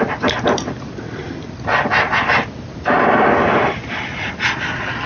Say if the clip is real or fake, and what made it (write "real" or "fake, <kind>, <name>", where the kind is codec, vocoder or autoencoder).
real